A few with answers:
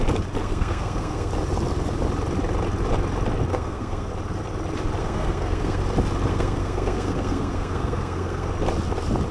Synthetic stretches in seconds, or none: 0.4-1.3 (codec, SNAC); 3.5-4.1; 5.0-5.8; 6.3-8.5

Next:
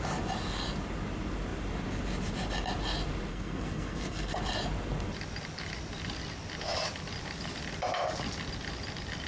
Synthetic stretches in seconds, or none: 3.3-4.4 (codec, SNAC)

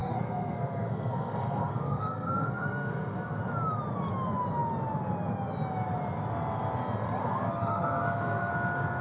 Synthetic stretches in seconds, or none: 0.0-3.4 (codec, SNAC); 7.2-8.5

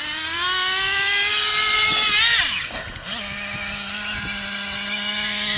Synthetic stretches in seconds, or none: none